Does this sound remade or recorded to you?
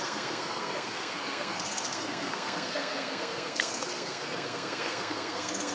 remade